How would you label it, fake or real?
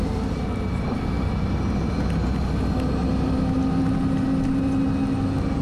real